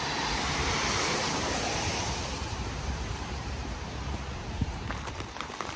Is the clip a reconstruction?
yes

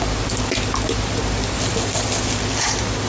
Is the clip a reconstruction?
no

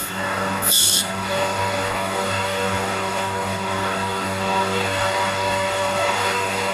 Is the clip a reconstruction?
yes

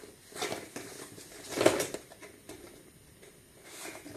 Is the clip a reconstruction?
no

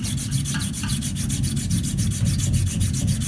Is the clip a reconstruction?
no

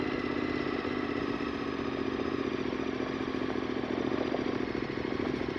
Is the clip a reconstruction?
no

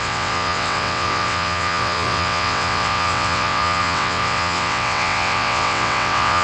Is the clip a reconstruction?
yes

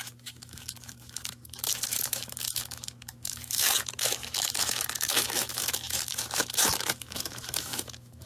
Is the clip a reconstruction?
yes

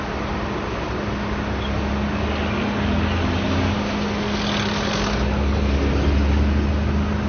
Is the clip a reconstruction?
no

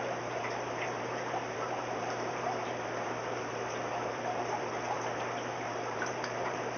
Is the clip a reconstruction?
yes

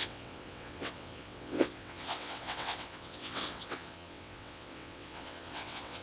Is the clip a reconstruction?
yes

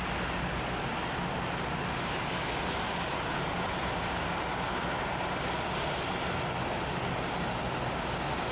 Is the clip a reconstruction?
no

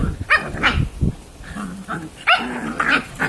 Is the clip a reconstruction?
no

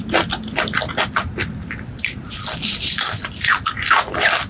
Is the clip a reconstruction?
no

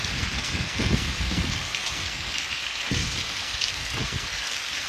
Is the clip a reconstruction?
yes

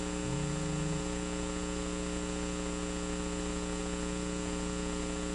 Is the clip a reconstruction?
no